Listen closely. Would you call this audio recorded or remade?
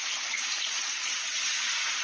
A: remade